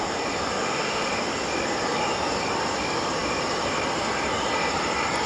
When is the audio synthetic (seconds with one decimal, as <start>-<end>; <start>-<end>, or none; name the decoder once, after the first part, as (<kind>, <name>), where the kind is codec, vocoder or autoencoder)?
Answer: 0.6-1.1 (autoencoder, DAC-VAE)